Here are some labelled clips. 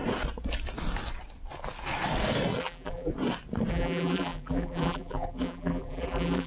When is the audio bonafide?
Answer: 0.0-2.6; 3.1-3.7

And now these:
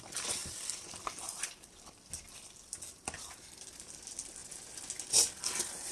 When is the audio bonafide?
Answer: 0.0-5.9